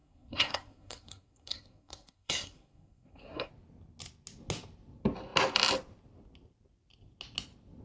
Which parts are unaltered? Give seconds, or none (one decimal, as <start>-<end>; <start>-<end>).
3.5-7.8